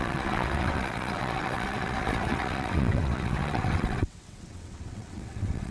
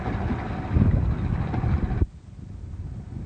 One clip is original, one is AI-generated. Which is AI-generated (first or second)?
first